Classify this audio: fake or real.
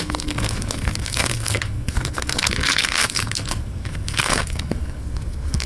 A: fake